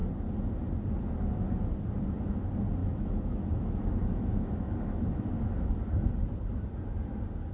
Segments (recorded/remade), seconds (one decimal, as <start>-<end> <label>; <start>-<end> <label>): 0.0-2.8 recorded; 2.8-5.7 remade; 5.7-7.5 recorded

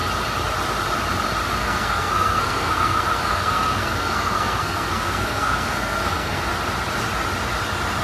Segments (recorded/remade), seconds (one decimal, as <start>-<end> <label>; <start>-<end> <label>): 0.0-1.5 recorded; 1.5-6.5 remade; 6.5-8.0 recorded

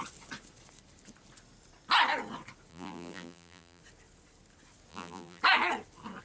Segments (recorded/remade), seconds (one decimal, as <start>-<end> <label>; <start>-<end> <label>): 0.0-2.7 recorded; 2.7-3.8 remade; 3.8-4.9 recorded; 4.9-5.4 remade; 5.4-6.2 recorded

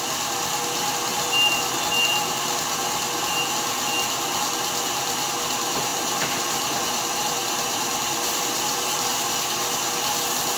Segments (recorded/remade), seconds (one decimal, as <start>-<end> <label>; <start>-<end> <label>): 0.0-1.1 recorded; 1.1-1.8 remade; 1.8-5.9 recorded; 5.9-9.3 remade; 9.3-10.6 recorded

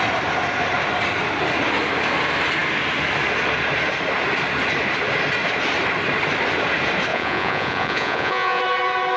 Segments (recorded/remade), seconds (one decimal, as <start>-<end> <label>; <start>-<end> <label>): 0.0-7.1 recorded; 7.1-8.6 remade; 8.6-9.2 recorded

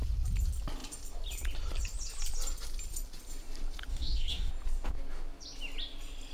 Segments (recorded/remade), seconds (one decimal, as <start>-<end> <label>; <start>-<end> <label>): 0.0-3.9 recorded; 3.9-4.5 remade; 4.5-6.3 recorded

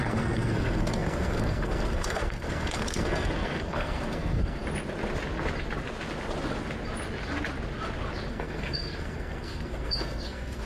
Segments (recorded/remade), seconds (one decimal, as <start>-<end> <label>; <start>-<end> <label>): 0.0-4.6 remade; 4.6-8.3 recorded; 8.3-10.7 remade